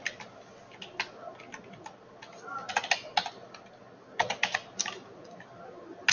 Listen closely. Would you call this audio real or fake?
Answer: real